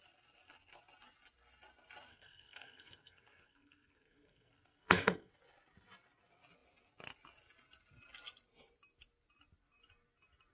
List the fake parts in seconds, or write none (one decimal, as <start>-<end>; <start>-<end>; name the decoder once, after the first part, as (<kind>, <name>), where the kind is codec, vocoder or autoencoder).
2.1-5.3 (codec, SNAC)